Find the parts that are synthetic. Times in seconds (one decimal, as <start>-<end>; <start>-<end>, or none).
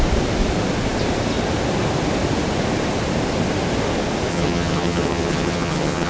4.3-6.1